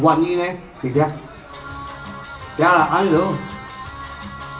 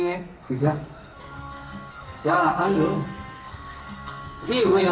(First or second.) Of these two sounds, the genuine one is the first